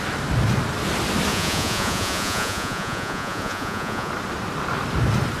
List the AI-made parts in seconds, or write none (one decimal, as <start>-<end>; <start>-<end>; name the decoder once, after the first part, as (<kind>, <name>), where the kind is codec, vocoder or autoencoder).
1.3-4.1 (vocoder, Vocos)